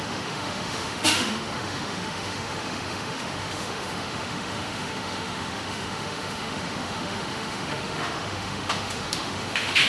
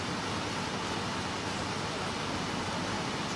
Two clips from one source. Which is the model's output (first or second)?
first